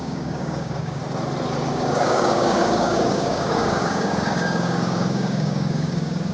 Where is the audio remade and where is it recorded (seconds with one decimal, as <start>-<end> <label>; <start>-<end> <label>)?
0.0-1.0 remade; 1.0-1.7 recorded; 1.7-6.3 remade